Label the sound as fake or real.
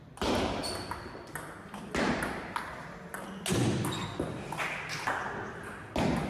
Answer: real